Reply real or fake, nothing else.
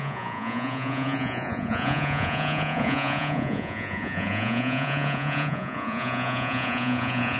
fake